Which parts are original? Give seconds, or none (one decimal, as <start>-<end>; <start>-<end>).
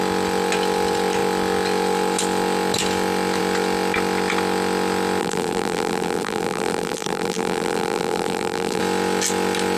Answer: 0.0-5.2; 8.8-9.8